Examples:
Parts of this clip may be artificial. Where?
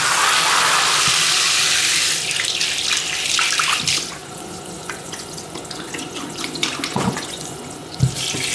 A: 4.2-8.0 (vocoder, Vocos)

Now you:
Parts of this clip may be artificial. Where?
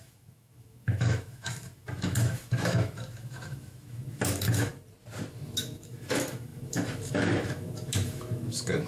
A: 0.0-4.7 (autoencoder, DAC-VAE); 5.3-8.9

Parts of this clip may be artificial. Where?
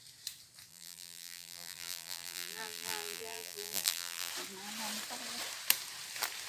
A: 0.7-4.3 (vocoder, BigVGAN v2)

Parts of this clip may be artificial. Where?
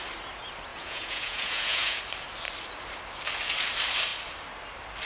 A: 0.7-2.0 (vocoder, Vocos)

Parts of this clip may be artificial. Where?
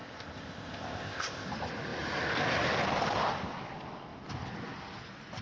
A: 0.0-1.5 (codec, ZipCodec)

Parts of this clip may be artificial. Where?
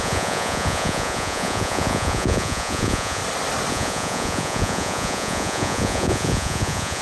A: 0.0-3.2 (vocoder, Vocos); 3.7-7.0